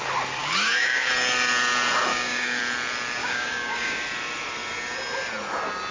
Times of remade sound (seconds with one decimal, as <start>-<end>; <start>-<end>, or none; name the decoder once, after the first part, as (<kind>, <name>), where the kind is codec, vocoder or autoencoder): 0.4-1.1 (codec, DAC); 2.1-2.6; 3.2-4.0